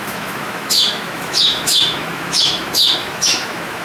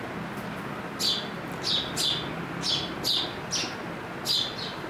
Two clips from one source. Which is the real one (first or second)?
second